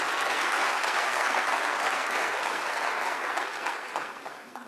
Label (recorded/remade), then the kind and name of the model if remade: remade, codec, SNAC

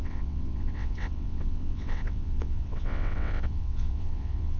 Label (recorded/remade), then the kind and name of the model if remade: remade, vocoder, WaveNeXt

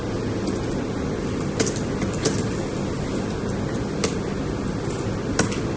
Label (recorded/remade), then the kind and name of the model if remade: recorded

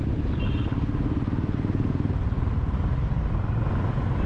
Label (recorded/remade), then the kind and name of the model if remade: recorded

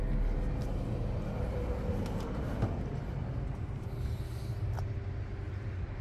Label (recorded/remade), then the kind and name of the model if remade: recorded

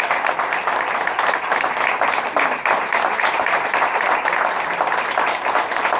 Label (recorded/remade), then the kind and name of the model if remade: recorded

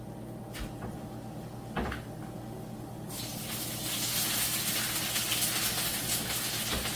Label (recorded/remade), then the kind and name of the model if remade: recorded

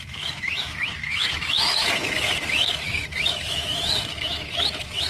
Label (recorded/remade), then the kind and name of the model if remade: remade, autoencoder, DAC-VAE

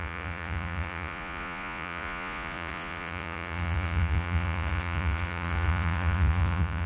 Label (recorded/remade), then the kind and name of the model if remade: remade, vocoder, Vocos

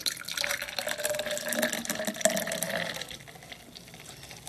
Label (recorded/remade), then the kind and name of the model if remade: recorded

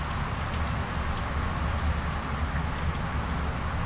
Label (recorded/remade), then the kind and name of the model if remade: recorded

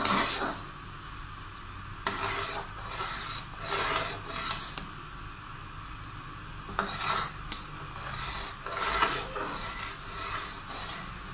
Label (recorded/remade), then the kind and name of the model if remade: recorded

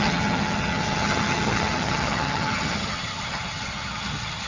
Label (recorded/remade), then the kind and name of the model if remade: remade, vocoder, HiFi-GAN